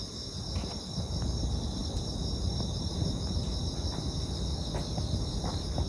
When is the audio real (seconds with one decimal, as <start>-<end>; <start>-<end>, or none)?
0.0-5.9